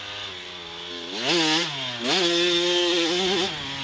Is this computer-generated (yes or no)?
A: no